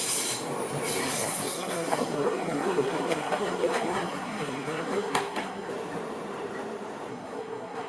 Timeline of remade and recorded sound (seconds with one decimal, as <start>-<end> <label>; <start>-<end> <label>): 0.0-1.0 recorded; 1.0-5.7 remade; 5.7-7.1 recorded; 7.1-7.9 remade